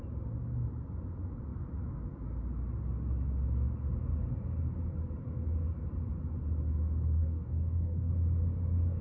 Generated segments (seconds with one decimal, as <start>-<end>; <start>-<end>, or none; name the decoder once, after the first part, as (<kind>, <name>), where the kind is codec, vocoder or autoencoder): 7.2-8.1 (codec, DAC)